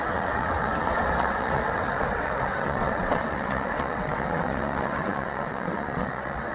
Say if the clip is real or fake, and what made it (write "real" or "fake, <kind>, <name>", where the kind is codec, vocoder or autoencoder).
fake, vocoder, WaveNeXt